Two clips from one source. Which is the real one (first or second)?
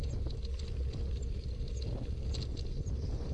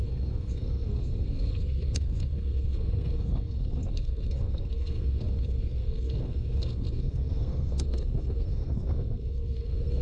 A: first